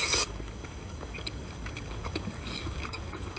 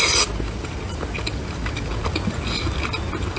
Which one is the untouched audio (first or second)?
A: second